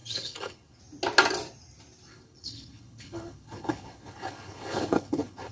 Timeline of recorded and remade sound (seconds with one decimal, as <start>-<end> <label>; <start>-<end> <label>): 0.0-0.8 remade; 0.8-2.1 recorded; 2.1-5.5 remade